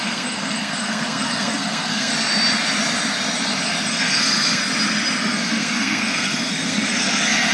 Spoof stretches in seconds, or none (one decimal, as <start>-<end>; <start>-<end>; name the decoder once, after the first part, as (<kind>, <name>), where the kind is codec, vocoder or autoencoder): 0.0-2.1 (codec, SNAC); 3.9-4.6; 5.2-7.5